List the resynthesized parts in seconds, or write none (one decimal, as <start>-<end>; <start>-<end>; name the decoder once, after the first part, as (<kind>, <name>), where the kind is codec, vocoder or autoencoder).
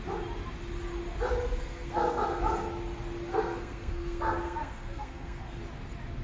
1.6-2.4 (codec, SNAC); 3.3-5.6